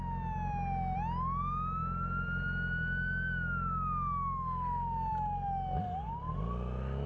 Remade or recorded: recorded